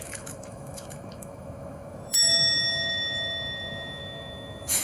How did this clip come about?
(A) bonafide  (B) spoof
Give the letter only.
B